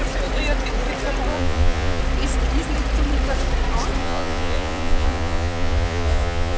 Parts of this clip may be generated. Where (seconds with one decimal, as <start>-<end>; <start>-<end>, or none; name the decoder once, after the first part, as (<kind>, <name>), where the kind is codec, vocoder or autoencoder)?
1.3-2.0 (vocoder, Vocos); 4.0-6.6